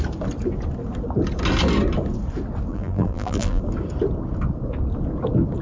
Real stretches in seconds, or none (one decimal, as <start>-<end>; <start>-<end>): 0.0-2.7; 3.6-5.6